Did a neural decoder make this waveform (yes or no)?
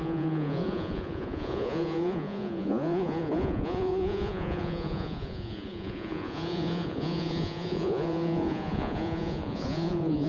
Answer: yes